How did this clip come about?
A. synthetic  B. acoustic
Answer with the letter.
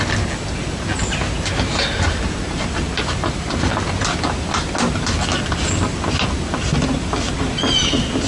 B